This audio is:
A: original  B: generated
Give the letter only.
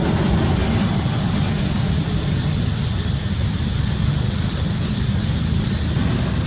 A